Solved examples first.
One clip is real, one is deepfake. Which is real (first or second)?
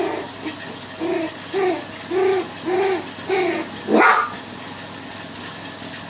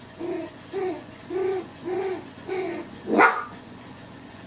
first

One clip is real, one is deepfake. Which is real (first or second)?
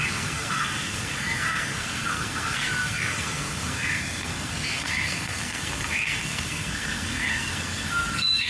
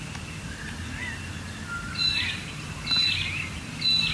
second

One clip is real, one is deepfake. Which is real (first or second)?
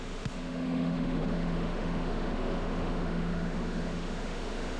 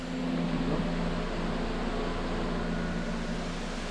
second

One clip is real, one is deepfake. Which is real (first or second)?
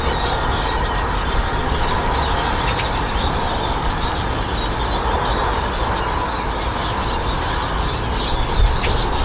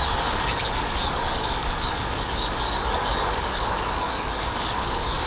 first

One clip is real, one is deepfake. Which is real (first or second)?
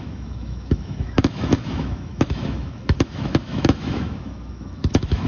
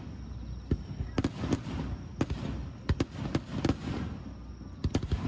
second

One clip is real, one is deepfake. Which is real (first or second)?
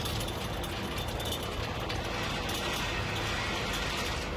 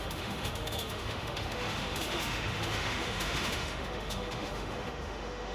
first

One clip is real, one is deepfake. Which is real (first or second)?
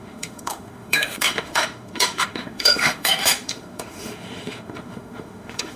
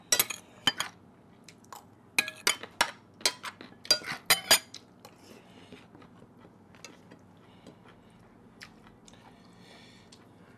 second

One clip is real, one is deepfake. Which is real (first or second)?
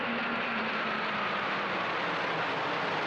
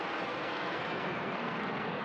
first